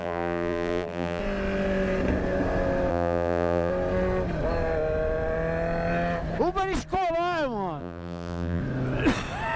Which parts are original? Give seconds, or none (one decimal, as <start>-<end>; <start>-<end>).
1.2-2.9; 3.7-7.8; 8.6-9.6